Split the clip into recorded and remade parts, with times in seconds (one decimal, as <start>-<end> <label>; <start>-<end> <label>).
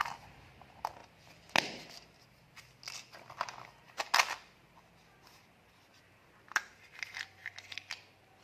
0.0-7.4 recorded; 7.4-8.4 remade